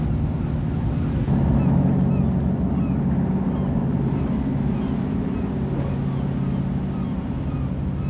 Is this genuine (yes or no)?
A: yes